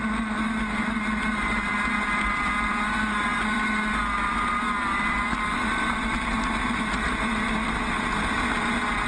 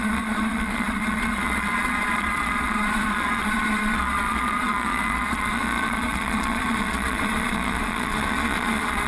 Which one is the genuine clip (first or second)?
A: first